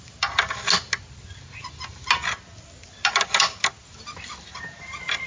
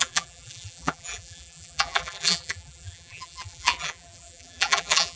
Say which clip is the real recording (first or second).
first